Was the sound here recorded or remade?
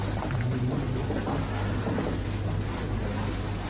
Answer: recorded